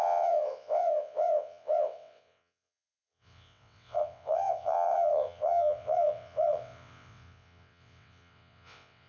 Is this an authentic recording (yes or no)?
no